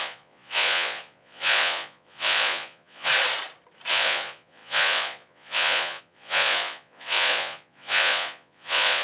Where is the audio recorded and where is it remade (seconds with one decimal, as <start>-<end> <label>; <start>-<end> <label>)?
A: 0.0-3.1 remade; 3.1-3.9 recorded; 3.9-9.0 remade